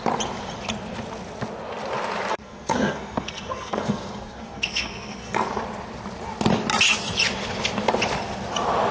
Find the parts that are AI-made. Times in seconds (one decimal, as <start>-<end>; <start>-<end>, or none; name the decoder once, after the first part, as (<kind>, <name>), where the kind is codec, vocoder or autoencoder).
2.3-5.5 (codec, SNAC)